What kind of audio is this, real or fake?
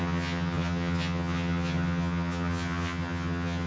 fake